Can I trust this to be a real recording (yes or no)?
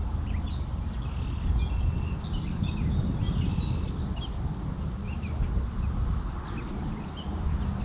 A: yes